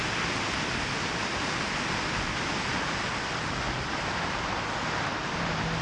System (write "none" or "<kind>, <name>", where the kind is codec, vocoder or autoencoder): none